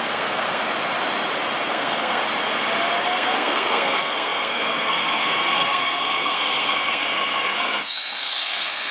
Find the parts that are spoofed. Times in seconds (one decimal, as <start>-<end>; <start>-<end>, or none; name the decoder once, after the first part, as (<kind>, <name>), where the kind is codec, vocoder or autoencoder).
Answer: 0.0-0.6 (codec, SNAC); 1.7-2.2; 3.0-8.9